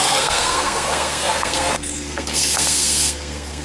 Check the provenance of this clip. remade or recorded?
remade